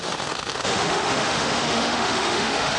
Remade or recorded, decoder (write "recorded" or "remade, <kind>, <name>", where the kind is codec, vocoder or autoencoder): remade, autoencoder, DAC-VAE